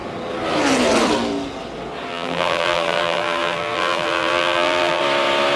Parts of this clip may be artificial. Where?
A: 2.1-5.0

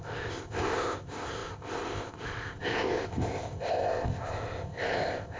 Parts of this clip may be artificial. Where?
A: 0.0-5.4

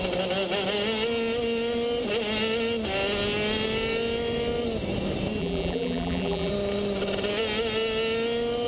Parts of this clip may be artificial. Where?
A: 5.4-6.5

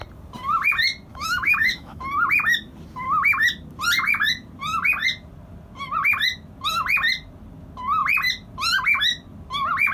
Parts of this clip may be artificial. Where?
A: 1.1-2.0

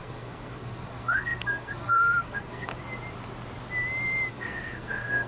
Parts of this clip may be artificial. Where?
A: 0.0-2.7; 4.3-5.3